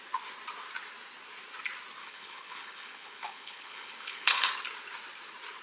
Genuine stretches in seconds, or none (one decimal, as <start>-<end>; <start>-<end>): 0.0-2.0; 4.5-5.6